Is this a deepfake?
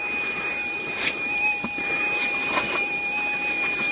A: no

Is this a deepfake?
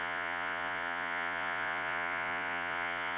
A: yes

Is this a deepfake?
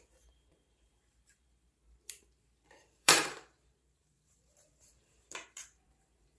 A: yes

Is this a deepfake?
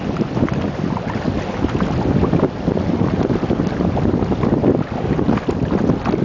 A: no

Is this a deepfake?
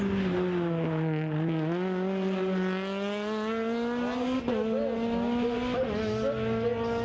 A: no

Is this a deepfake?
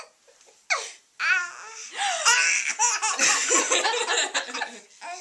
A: no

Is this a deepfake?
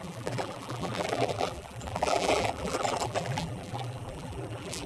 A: yes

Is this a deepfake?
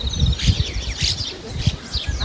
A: yes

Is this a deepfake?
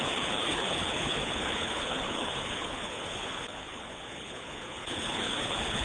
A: yes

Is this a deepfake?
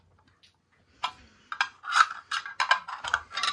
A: no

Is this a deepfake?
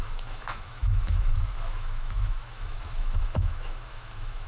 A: yes